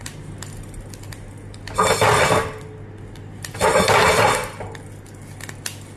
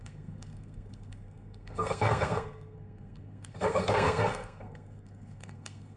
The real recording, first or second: first